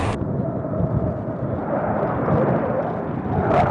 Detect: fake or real real